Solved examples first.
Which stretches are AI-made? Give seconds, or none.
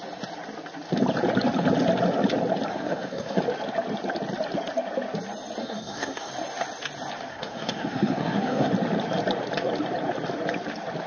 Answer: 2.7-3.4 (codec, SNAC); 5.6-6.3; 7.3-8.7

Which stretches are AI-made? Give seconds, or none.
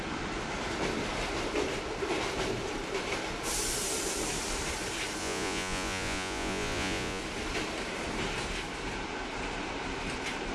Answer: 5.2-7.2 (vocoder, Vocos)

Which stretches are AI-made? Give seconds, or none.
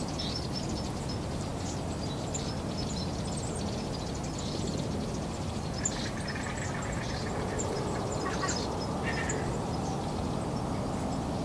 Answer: none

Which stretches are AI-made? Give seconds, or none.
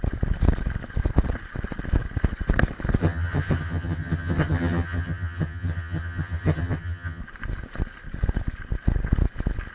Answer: 3.0-7.2 (vocoder, HiFi-GAN)